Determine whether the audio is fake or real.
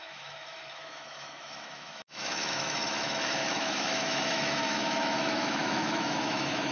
fake